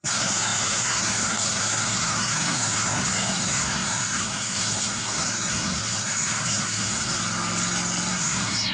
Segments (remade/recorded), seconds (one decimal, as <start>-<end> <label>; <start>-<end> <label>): 0.0-7.2 remade; 7.2-8.1 recorded; 8.1-8.7 remade